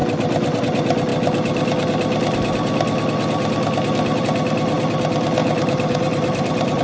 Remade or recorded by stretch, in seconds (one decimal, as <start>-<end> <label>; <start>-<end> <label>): 0.0-5.4 recorded; 5.4-6.8 remade